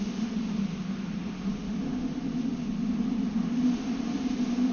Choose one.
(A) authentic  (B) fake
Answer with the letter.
A